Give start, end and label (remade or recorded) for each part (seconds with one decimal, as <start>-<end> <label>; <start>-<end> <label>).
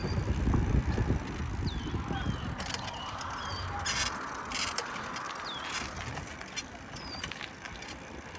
0.0-8.4 recorded